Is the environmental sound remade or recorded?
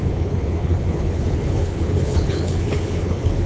remade